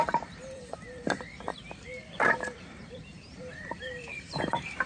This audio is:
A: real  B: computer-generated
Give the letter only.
B